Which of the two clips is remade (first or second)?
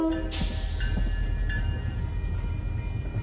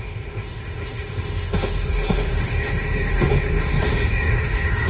second